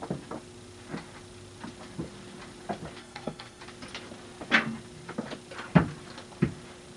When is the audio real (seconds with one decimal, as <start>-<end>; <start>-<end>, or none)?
0.0-3.0; 3.6-7.0